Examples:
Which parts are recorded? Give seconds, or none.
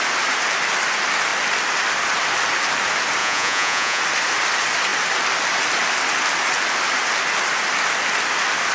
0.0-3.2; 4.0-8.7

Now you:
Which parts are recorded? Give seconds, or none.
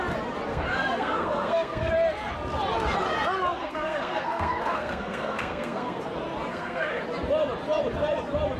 0.0-0.5; 1.9-3.6; 6.0-6.5; 7.0-8.6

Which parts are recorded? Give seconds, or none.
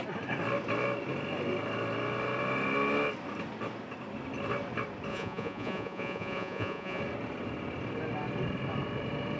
0.0-5.1; 7.0-9.4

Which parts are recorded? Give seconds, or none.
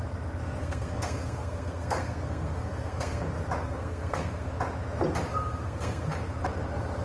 0.0-0.6; 3.2-3.6; 4.5-5.3; 6.1-7.0